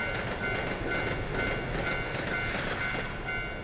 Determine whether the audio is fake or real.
real